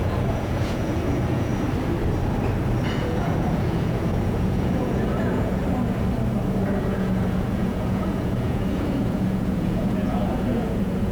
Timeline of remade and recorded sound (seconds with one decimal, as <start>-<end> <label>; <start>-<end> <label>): 0.0-1.5 remade; 1.5-2.9 recorded; 2.9-5.6 remade; 5.6-6.8 recorded; 6.8-11.1 remade